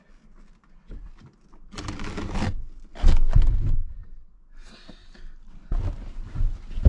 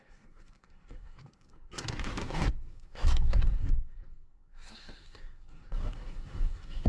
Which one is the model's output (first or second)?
second